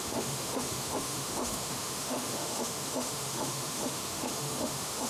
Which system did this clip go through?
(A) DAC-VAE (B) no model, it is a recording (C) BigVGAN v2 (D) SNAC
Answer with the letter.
A